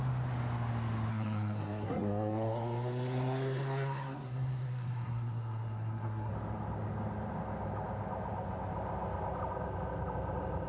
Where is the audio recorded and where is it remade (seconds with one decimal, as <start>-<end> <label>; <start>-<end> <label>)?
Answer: 0.0-1.1 recorded; 1.1-6.3 remade; 6.3-10.7 recorded